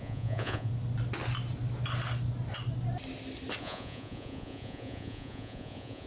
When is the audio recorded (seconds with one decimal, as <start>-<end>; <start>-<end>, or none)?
0.7-3.6